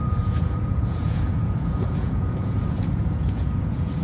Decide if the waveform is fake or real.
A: fake